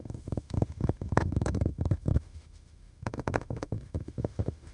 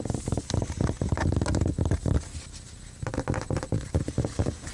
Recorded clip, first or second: second